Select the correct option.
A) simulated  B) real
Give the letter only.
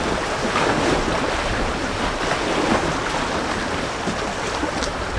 B